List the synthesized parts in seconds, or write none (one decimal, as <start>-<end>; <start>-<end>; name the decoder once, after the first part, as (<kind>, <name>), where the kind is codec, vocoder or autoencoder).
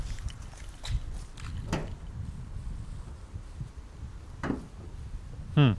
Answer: none